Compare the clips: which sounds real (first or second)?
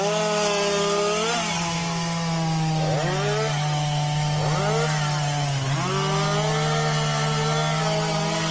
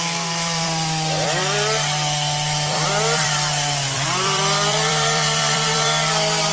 first